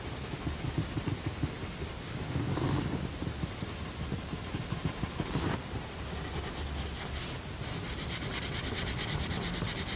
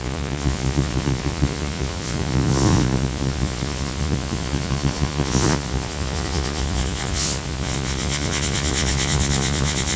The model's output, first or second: second